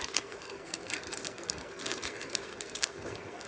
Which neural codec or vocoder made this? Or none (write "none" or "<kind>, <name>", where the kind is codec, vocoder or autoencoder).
codec, SNAC